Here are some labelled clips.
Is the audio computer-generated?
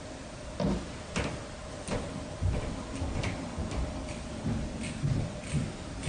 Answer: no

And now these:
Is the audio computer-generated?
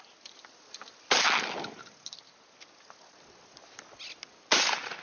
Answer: no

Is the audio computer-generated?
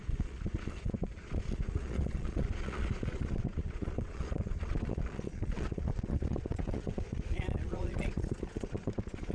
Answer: yes